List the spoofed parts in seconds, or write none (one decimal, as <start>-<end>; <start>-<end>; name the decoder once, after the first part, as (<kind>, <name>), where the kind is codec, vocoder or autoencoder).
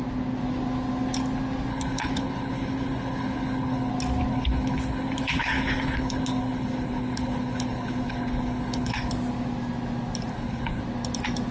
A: 1.7-3.9 (codec, HILCodec); 4.3-9.1; 10.3-10.8